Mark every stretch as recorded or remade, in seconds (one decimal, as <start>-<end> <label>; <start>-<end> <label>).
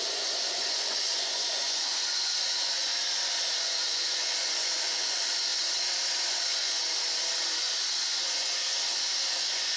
0.0-2.9 remade; 2.9-3.6 recorded; 3.6-5.5 remade; 5.5-6.3 recorded; 6.3-6.8 remade; 6.8-8.0 recorded; 8.0-8.6 remade; 8.6-9.3 recorded; 9.3-9.8 remade